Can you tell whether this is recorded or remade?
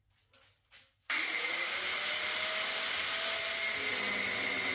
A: recorded